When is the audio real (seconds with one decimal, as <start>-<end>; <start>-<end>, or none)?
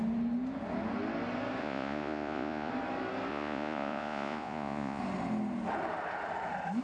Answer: 0.0-1.6; 2.7-3.3; 5.0-6.8